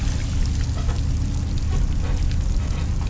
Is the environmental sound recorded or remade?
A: recorded